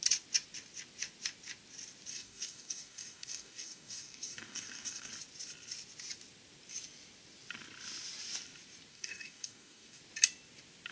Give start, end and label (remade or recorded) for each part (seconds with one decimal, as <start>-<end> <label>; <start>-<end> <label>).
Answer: 0.0-2.1 recorded; 2.1-5.1 remade; 5.1-8.9 recorded; 8.9-10.0 remade; 10.0-10.9 recorded